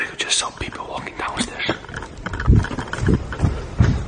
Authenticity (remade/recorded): remade